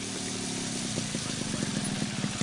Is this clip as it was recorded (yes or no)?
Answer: yes